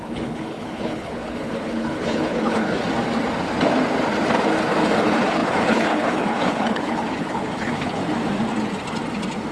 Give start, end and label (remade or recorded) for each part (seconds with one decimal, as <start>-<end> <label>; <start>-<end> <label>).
0.0-2.8 remade; 2.8-5.0 recorded; 5.0-8.0 remade; 8.0-9.5 recorded